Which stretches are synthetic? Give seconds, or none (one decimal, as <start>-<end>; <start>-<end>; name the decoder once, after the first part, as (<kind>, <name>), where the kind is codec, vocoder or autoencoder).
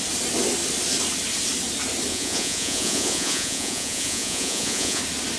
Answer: 2.1-5.0 (vocoder, Vocos)